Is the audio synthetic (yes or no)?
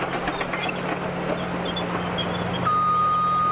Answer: no